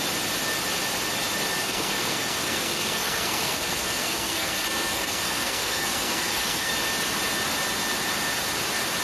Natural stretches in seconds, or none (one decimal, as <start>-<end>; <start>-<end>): 0.0-1.6; 6.7-9.0

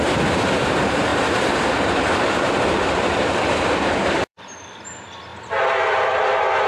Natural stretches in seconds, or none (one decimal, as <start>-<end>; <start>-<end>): none

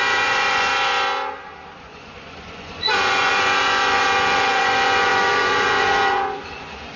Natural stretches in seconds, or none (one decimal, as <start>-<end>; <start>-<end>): 0.7-1.8

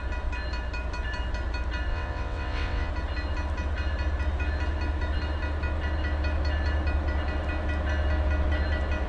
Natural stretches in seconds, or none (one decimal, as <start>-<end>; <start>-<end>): 0.0-1.9; 2.9-9.1

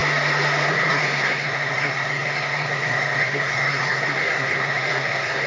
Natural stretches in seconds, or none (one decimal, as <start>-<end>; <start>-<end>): 0.0-0.7

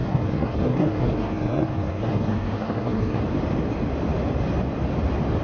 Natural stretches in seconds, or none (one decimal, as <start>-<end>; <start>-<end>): 3.2-5.4

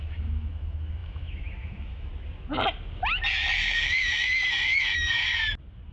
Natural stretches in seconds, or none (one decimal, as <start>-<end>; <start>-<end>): 2.1-3.7; 5.2-5.9

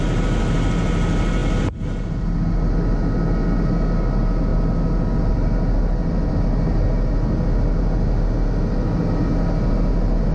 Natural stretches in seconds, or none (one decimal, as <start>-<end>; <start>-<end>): 0.0-10.3